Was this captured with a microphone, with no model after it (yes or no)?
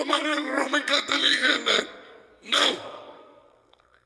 no